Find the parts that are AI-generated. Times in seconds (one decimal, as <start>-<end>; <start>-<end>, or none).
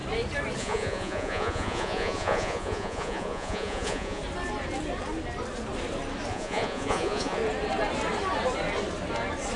0.6-4.2; 6.3-7.4